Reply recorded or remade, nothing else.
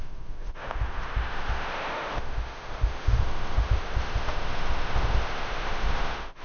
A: remade